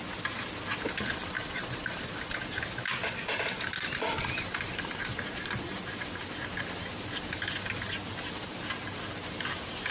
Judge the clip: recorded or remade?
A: recorded